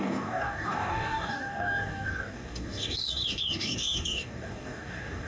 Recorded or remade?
remade